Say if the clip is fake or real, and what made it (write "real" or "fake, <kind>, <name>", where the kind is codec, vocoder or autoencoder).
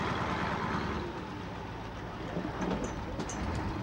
real